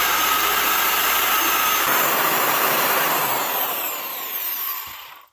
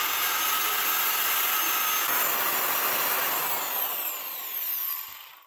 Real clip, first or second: second